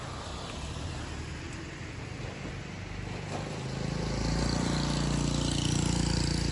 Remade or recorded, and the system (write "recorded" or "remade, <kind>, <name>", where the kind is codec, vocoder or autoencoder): recorded